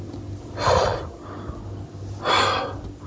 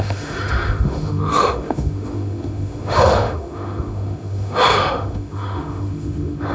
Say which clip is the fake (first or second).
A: second